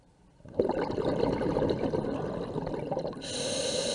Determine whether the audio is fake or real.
real